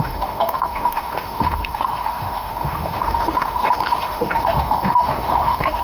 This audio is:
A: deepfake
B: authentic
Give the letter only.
A